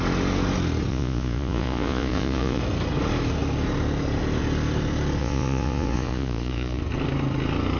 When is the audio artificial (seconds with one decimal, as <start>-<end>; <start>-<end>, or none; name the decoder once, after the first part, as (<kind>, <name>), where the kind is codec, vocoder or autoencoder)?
0.9-2.6 (vocoder, Vocos); 5.2-6.8